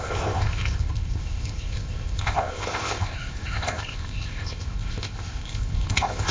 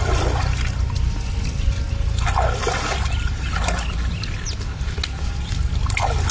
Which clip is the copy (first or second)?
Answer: first